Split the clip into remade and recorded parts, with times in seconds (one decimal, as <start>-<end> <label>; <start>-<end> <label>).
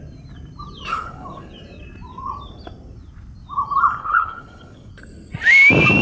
0.0-0.9 recorded; 0.9-1.5 remade; 1.5-4.0 recorded; 4.0-4.9 remade; 4.9-6.0 recorded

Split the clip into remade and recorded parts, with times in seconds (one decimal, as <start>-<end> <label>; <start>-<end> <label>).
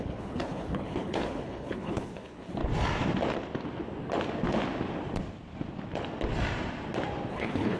0.0-2.6 remade; 2.6-7.3 recorded; 7.3-7.8 remade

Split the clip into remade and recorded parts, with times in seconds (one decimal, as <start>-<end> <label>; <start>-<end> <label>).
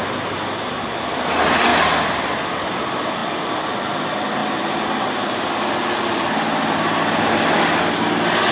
0.0-8.5 recorded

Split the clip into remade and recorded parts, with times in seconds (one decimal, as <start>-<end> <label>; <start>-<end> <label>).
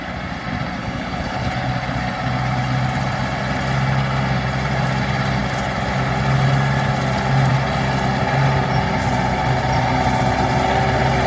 0.0-0.8 recorded; 0.8-1.5 remade; 1.5-11.3 recorded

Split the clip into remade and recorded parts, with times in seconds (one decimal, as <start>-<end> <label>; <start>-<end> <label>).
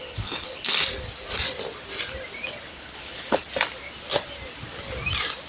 0.0-0.7 remade; 0.7-2.7 recorded; 2.7-3.4 remade; 3.4-5.5 recorded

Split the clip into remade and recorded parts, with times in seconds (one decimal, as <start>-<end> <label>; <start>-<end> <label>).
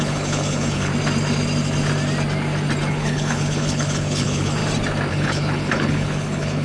0.0-0.9 remade; 0.9-2.9 recorded; 2.9-4.6 remade; 4.6-5.1 recorded; 5.1-6.6 remade